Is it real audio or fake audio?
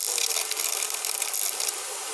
real